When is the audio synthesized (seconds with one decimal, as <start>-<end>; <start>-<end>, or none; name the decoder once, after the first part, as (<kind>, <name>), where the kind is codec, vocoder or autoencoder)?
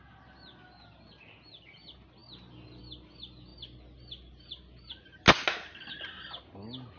none